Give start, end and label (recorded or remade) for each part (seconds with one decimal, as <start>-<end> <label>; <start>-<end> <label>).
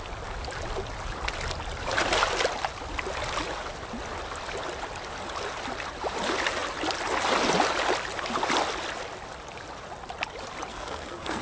0.0-10.7 recorded; 10.7-11.4 remade